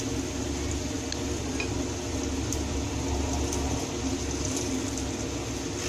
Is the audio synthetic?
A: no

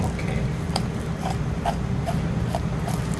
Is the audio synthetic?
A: no